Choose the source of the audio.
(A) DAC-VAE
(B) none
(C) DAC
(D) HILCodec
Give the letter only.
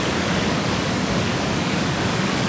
C